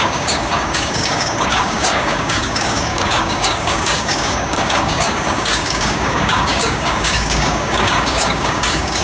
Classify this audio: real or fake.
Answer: fake